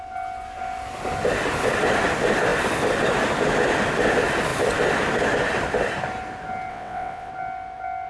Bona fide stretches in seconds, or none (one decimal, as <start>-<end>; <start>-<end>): 0.0-6.7; 7.3-8.1